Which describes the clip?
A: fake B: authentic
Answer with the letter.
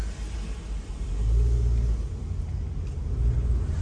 B